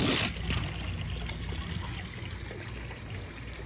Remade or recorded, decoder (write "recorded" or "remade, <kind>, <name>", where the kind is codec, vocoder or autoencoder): recorded